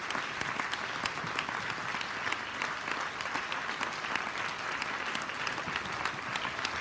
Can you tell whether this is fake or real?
real